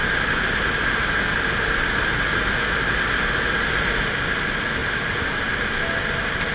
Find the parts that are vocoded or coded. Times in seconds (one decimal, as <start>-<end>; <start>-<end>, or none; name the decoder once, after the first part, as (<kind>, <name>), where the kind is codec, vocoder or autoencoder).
none